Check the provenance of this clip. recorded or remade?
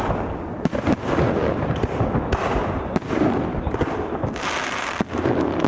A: recorded